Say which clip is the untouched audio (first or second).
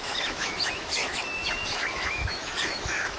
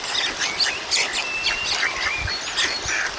second